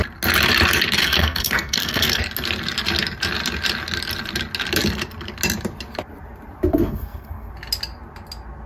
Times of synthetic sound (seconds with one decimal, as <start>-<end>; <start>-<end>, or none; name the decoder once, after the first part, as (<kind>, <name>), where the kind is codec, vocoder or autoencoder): 1.0-2.2 (codec, SNAC); 6.7-7.5